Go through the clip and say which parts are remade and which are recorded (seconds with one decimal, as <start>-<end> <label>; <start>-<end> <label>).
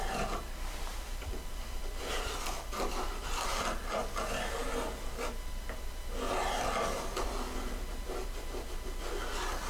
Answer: 0.0-0.9 recorded; 0.9-4.0 remade; 4.0-9.7 recorded